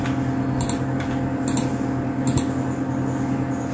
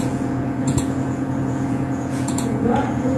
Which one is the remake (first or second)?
second